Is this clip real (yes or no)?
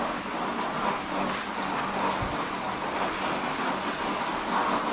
yes